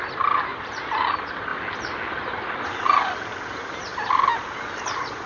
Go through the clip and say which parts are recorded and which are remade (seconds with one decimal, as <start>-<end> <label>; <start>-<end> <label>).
0.0-0.5 recorded; 0.5-1.1 remade; 1.1-5.3 recorded